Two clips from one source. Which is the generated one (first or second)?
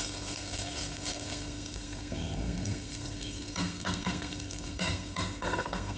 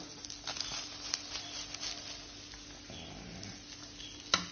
first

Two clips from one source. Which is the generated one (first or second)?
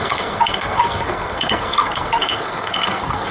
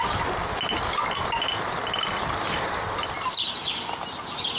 first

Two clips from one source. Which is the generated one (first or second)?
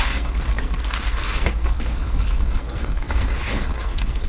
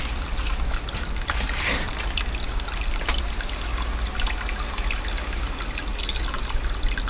first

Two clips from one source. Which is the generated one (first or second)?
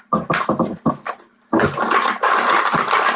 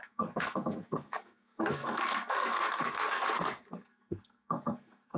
second